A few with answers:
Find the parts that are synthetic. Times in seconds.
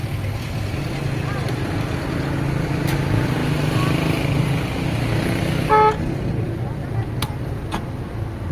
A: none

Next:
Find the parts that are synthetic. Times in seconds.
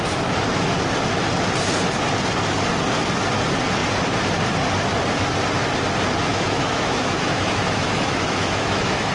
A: 6.3-9.1 (autoencoder, DAC-VAE)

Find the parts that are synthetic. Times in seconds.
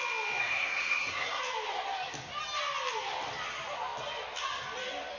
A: 0.4-1.4 (codec, SNAC)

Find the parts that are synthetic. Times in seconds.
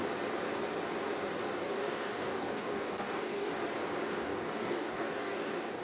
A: 1.6-3.5 (codec, DAC); 4.1-5.8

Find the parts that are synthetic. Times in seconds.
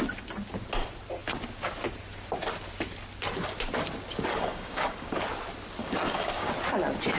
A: 4.3-5.2 (codec, DAC); 5.8-6.5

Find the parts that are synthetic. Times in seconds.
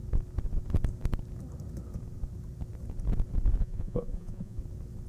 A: 3.6-4.6 (vocoder, Vocos)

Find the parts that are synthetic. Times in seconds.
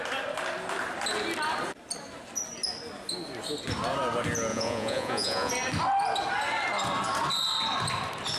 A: 4.5-5.5 (vocoder, Vocos)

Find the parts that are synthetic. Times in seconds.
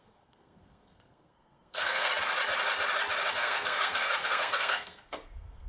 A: 0.0-2.1 (codec, SNAC); 3.3-5.7